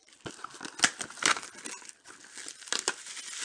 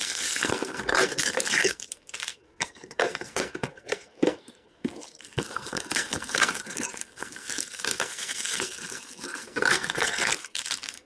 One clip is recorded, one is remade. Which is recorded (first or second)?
first